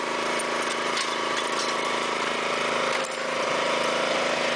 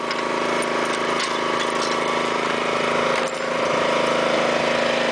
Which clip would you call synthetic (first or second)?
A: first